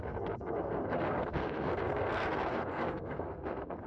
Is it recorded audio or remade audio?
remade